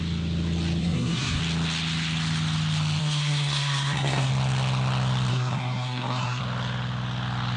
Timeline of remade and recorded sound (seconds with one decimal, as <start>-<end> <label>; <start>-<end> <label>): 0.0-0.8 recorded; 0.8-1.4 remade; 1.4-3.0 recorded; 3.0-4.3 remade; 4.3-5.3 recorded; 5.3-6.4 remade; 6.4-7.6 recorded